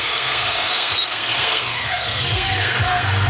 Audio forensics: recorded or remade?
remade